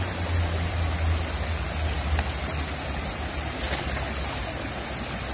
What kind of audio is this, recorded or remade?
recorded